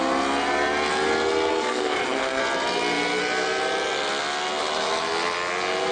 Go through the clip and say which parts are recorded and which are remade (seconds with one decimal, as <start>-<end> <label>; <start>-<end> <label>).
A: 0.0-1.5 recorded; 1.5-2.4 remade; 2.4-5.9 recorded